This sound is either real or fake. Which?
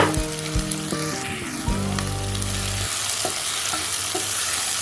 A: real